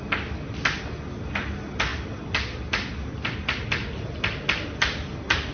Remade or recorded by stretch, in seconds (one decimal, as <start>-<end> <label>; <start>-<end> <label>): 0.0-5.5 recorded